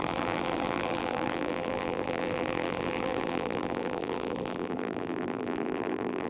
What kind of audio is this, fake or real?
fake